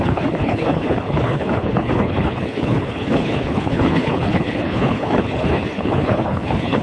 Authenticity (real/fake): fake